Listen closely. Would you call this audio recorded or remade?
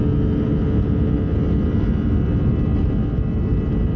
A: recorded